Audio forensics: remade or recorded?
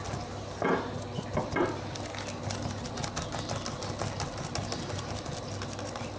recorded